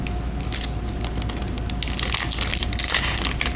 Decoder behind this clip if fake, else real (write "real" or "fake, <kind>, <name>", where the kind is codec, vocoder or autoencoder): real